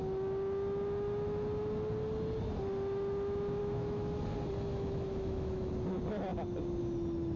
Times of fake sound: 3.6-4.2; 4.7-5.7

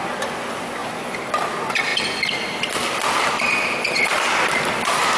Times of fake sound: 0.8-1.5